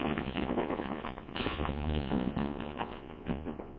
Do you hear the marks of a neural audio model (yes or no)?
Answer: yes